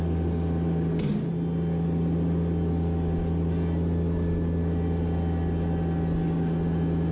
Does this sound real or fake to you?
real